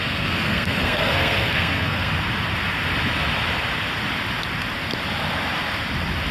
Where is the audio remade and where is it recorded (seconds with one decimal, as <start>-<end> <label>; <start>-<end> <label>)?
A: 0.0-2.1 remade; 2.1-6.3 recorded

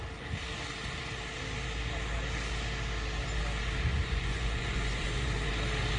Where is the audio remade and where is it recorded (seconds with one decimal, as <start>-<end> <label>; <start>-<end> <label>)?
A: 0.0-3.9 recorded; 3.9-5.5 remade; 5.5-6.0 recorded

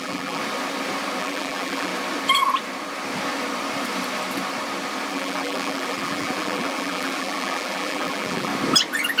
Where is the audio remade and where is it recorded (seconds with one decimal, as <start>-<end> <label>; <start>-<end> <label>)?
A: 0.0-0.4 remade; 0.4-1.2 recorded; 1.2-1.9 remade; 1.9-5.1 recorded; 5.1-8.5 remade; 8.5-9.2 recorded

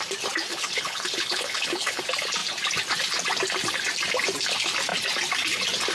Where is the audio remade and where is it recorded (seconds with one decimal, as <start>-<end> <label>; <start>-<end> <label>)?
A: 0.0-0.5 recorded; 0.5-2.0 remade; 2.0-5.9 recorded

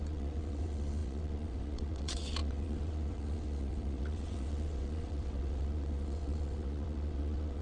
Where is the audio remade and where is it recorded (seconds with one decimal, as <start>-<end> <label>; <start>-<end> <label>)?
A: 0.0-7.6 remade

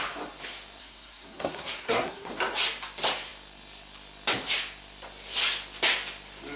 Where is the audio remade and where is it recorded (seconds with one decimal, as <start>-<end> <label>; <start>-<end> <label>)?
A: 0.0-0.8 recorded; 0.8-2.3 remade; 2.3-6.6 recorded

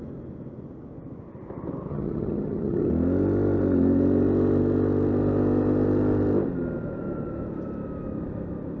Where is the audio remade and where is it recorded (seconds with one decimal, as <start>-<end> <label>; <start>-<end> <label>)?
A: 0.0-1.9 recorded; 1.9-2.9 remade; 2.9-8.8 recorded

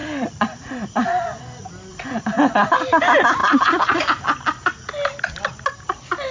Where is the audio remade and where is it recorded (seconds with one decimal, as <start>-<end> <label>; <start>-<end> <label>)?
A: 0.0-1.4 remade; 1.4-1.9 recorded; 1.9-2.6 remade; 2.6-3.4 recorded; 3.4-4.9 remade; 4.9-6.3 recorded